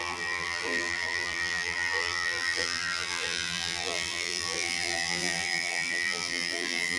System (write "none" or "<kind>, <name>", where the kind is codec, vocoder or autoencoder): vocoder, BigVGAN v2